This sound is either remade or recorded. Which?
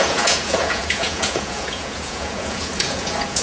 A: remade